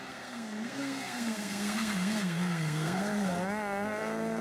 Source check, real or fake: fake